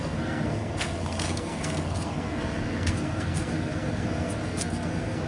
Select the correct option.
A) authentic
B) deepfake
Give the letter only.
B